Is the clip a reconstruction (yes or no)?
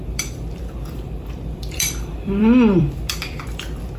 yes